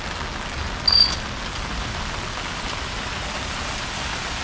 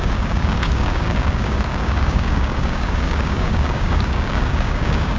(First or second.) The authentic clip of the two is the first